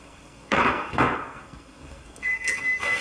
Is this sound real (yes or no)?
no